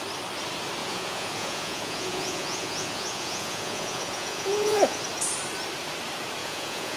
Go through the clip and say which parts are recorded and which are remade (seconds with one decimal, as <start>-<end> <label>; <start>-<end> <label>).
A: 0.0-0.8 recorded; 0.8-5.0 remade; 5.0-6.4 recorded; 6.4-7.0 remade

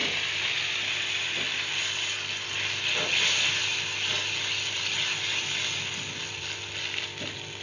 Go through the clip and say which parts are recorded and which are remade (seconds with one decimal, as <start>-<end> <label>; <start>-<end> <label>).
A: 0.0-7.6 recorded

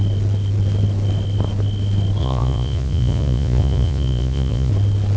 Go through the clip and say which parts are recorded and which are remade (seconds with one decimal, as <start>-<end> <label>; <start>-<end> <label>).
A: 0.0-2.2 recorded; 2.2-4.7 remade; 4.7-5.2 recorded

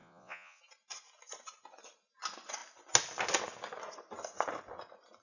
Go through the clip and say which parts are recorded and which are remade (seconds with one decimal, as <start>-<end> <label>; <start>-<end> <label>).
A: 0.0-0.6 remade; 0.6-5.2 recorded

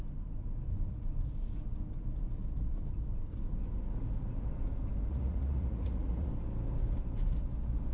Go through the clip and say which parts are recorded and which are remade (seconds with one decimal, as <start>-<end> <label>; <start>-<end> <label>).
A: 0.0-5.1 recorded; 5.1-6.3 remade; 6.3-7.9 recorded

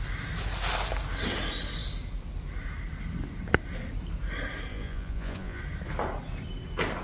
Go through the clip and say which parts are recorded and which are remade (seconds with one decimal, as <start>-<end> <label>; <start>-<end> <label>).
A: 0.0-4.7 recorded; 4.7-5.6 remade; 5.6-7.0 recorded

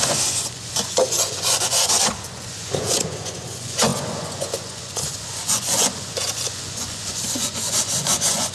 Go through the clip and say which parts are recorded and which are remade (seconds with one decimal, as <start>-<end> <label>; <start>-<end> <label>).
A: 0.0-8.5 remade